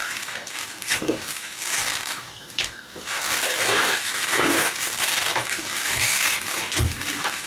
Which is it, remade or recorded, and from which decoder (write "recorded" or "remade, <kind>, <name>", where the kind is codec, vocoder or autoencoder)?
remade, codec, DAC